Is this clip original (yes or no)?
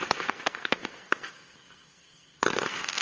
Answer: no